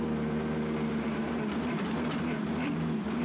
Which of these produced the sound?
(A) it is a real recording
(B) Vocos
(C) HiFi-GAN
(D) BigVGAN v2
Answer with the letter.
A